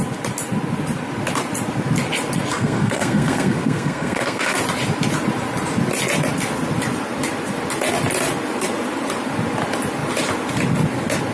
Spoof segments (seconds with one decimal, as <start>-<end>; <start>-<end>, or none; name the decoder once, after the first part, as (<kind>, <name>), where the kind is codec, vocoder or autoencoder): 2.5-4.6 (codec, SNAC)